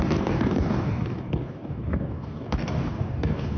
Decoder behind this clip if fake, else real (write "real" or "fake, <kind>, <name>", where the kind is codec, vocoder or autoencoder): fake, codec, DAC